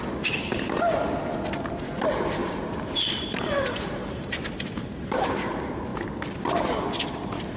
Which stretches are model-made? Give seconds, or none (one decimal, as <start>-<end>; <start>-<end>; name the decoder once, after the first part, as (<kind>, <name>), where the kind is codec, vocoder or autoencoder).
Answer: 2.4-5.3 (vocoder, BigVGAN v2)